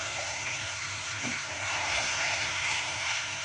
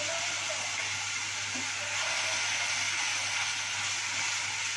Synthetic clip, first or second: first